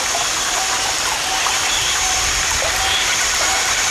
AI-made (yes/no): yes